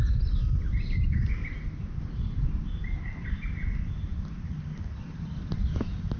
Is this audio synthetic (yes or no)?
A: no